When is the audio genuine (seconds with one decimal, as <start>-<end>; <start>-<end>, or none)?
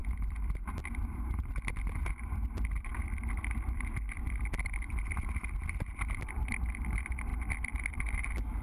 none